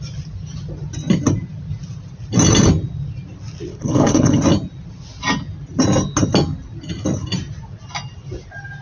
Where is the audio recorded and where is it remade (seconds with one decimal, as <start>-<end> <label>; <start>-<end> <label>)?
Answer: 0.0-3.7 recorded; 3.7-4.4 remade; 4.4-8.8 recorded